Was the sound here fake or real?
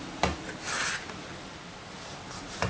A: real